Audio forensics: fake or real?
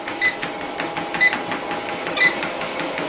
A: real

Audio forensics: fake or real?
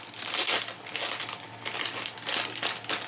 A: real